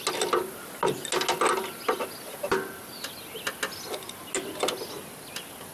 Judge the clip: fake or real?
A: real